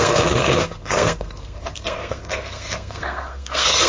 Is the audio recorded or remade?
remade